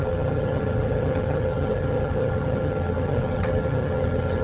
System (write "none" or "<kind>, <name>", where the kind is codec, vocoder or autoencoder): vocoder, HiFi-GAN